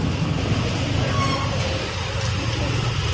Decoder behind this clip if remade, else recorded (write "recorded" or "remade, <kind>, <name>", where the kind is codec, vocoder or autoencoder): recorded